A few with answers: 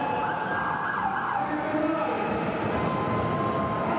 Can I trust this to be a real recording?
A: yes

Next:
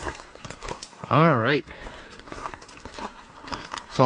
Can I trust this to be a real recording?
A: no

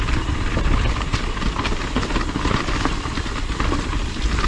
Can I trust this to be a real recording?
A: yes